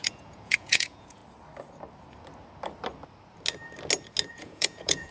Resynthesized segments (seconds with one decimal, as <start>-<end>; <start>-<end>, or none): 0.0-1.2; 4.3-5.1